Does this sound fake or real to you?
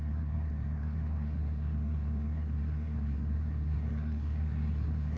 fake